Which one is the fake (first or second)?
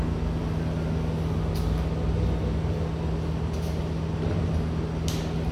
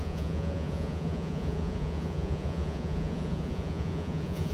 second